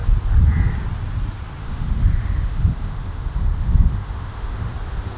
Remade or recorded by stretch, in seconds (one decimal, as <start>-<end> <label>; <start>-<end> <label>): 0.0-1.6 recorded; 1.6-4.7 remade; 4.7-5.2 recorded